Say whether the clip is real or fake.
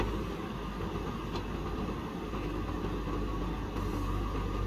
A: real